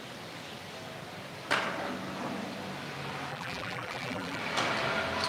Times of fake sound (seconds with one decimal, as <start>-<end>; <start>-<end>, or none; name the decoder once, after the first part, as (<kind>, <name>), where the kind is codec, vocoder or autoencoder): 3.3-4.4 (vocoder, BigVGAN v2)